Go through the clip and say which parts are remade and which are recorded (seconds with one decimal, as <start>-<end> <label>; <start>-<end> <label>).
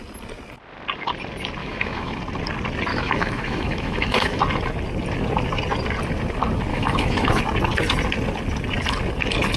0.0-1.6 recorded; 1.6-2.2 remade; 2.2-2.9 recorded; 2.9-4.4 remade; 4.4-6.7 recorded; 6.7-7.4 remade; 7.4-9.6 recorded